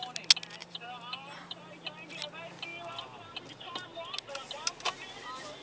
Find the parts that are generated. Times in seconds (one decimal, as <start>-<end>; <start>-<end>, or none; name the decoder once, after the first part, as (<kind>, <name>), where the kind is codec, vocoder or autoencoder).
0.6-1.6 (vocoder, BigVGAN v2)